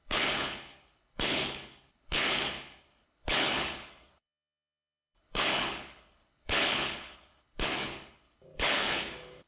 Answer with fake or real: fake